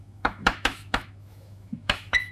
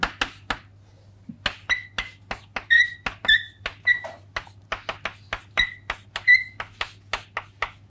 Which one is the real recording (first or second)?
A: second